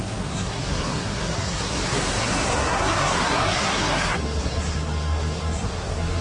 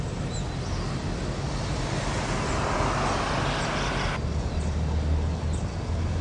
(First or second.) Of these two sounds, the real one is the second